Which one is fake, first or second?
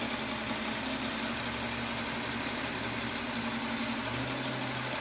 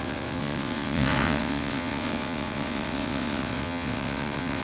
second